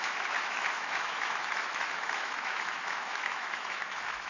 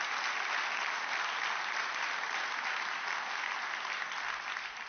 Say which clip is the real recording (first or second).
second